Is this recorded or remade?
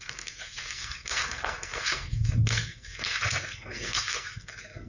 remade